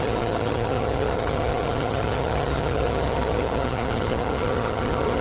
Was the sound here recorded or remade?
remade